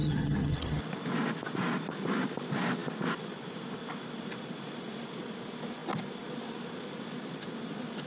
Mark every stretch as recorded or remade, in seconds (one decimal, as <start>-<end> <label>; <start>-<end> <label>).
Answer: 0.0-0.8 remade; 0.8-8.1 recorded